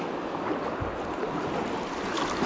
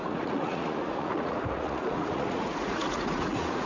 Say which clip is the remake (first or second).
second